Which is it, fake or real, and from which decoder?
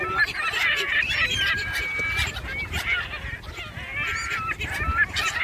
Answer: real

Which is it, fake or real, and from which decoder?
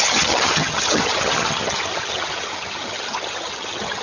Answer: fake, vocoder, HiFi-GAN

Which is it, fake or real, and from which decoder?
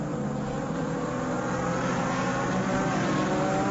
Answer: fake, vocoder, BigVGAN v2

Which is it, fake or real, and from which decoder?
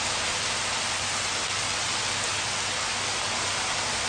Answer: real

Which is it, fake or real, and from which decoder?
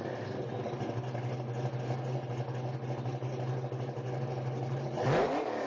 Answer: real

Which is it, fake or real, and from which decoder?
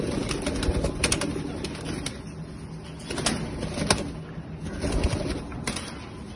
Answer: real